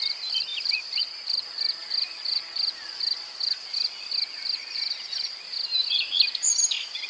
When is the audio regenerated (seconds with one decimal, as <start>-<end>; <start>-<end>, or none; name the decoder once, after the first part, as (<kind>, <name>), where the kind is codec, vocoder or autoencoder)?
0.5-1.0 (vocoder, BigVGAN v2); 1.8-6.1